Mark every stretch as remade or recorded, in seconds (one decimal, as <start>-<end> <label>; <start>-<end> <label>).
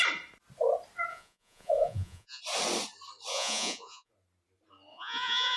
0.0-1.1 recorded; 1.1-2.4 remade; 2.4-3.3 recorded; 3.3-4.1 remade; 4.1-4.9 recorded; 4.9-5.6 remade